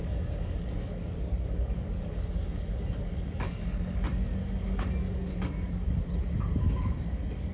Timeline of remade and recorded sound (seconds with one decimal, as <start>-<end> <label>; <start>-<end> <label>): 0.0-6.0 remade; 6.0-6.6 recorded; 6.6-7.5 remade